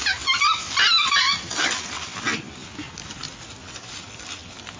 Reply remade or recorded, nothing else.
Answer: recorded